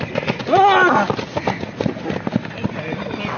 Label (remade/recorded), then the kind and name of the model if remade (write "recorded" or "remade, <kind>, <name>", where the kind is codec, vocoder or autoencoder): recorded